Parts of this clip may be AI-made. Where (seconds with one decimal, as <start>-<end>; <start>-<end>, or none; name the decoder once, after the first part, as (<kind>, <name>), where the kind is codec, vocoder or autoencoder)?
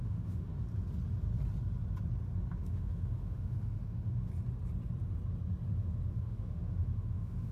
0.0-0.5 (autoencoder, DAC-VAE); 2.6-4.3; 6.1-7.5